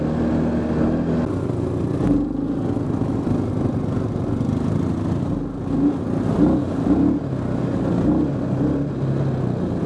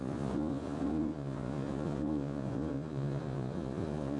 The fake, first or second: second